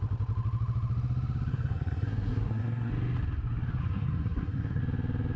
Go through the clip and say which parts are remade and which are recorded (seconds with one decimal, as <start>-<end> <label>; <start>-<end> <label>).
0.0-1.5 recorded; 1.5-2.9 remade; 2.9-3.8 recorded; 3.8-4.8 remade; 4.8-5.4 recorded